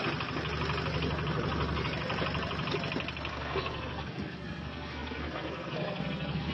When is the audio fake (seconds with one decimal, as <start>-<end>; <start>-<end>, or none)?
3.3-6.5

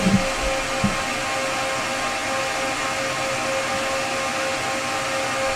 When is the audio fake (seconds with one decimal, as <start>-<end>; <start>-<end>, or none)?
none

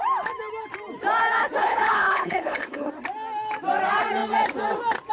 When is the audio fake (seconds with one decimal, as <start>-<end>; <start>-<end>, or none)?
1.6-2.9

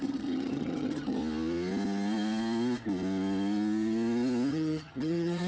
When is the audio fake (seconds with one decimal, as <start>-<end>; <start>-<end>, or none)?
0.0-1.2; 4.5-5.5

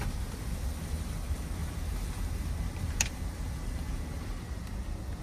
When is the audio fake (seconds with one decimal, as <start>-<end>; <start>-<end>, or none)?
1.6-4.7

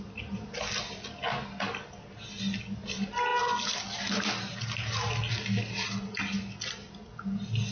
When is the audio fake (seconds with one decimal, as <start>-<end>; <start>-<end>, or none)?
none

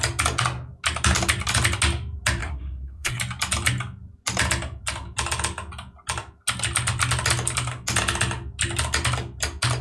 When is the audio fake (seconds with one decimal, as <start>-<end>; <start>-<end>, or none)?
2.4-3.2

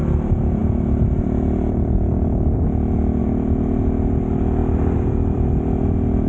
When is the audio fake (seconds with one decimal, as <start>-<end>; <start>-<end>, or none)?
0.0-6.3